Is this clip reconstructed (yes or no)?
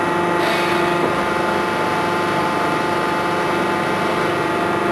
no